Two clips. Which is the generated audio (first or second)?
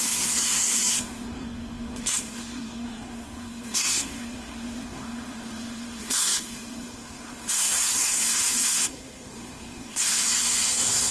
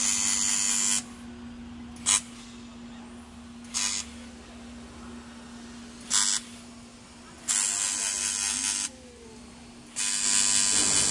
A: first